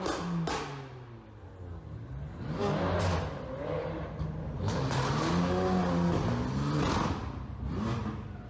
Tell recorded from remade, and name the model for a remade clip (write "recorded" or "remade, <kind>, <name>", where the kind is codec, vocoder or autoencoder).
recorded